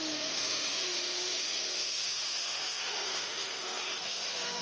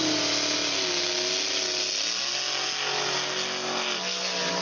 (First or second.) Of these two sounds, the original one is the second